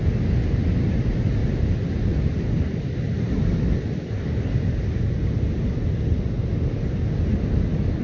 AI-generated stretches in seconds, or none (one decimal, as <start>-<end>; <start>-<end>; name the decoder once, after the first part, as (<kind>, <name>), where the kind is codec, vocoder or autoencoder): none